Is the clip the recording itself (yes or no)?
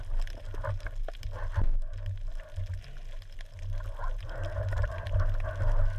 yes